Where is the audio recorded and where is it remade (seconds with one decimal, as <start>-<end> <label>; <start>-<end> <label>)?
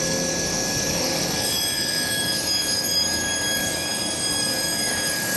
0.0-5.4 remade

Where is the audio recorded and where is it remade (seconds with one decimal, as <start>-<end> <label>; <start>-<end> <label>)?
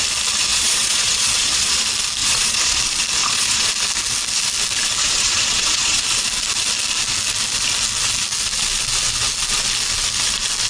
0.0-0.5 recorded; 0.5-1.8 remade; 1.8-2.2 recorded; 2.2-2.8 remade; 2.8-3.2 recorded; 3.2-3.7 remade; 3.7-5.0 recorded; 5.0-6.0 remade; 6.0-10.7 recorded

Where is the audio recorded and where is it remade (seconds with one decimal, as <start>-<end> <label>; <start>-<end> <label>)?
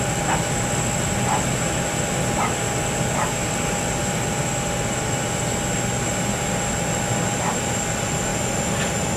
0.0-9.2 recorded